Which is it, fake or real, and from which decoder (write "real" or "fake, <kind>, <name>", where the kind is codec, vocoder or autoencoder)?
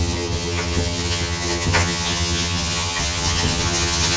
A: fake, vocoder, HiFi-GAN